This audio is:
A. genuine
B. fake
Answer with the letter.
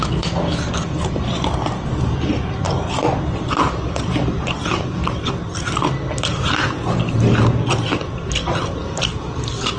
A